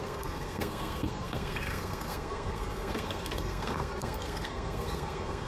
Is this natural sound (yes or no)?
no